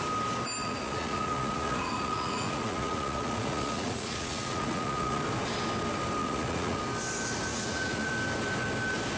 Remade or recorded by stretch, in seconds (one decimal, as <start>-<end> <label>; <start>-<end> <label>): 0.0-0.6 recorded; 0.6-5.2 remade; 5.2-6.2 recorded; 6.2-6.8 remade; 6.8-7.5 recorded; 7.5-8.1 remade; 8.1-9.2 recorded